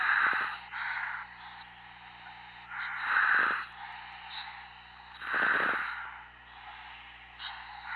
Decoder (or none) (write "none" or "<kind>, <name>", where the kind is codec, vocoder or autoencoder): none